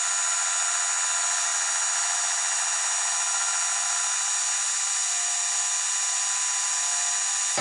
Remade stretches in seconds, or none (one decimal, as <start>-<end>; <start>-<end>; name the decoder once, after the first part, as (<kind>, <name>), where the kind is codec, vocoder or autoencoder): none